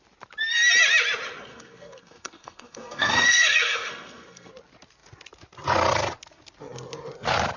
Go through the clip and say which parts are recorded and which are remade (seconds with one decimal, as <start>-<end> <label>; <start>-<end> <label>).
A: 0.0-1.5 recorded; 1.5-4.5 remade; 4.5-7.6 recorded